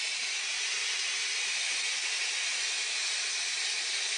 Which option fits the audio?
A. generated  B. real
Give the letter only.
B